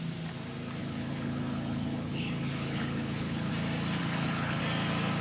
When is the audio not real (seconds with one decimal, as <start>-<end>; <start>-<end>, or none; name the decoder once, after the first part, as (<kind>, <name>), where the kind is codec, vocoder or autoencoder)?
0.8-3.5 (codec, HILCodec); 4.0-4.6